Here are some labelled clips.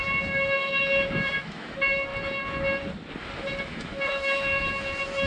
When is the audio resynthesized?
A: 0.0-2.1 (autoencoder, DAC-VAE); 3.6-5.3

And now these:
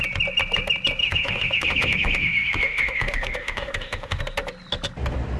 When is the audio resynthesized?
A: 1.0-4.2 (autoencoder, DAC-VAE)